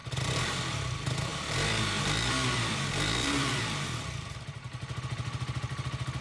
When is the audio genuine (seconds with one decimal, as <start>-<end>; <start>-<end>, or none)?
0.5-1.3; 5.0-6.2